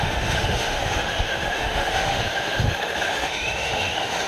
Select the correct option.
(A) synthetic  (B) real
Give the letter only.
A